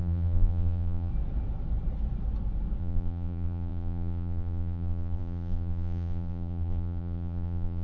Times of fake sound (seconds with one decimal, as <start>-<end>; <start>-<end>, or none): 0.0-1.1; 2.8-7.8